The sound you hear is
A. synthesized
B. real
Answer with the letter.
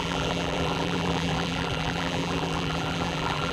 A